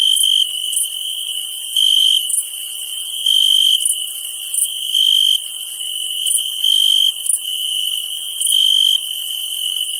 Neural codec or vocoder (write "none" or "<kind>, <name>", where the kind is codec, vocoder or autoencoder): none